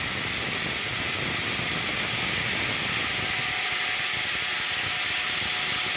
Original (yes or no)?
yes